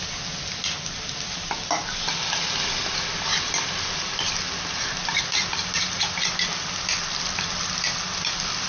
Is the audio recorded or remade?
recorded